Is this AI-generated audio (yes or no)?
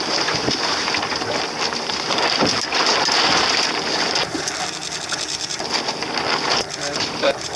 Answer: yes